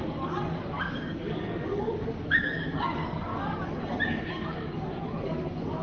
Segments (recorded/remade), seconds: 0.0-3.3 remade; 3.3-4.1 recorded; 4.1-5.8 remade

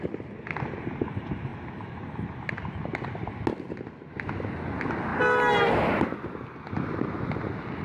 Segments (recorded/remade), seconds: 0.0-7.8 recorded

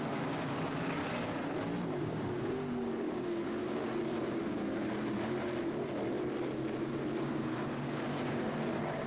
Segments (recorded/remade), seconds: 0.0-1.0 remade; 1.0-2.0 recorded; 2.0-3.8 remade; 3.8-7.3 recorded; 7.3-9.1 remade